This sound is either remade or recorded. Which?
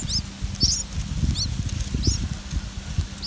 recorded